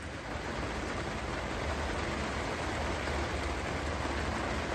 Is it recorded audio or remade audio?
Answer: recorded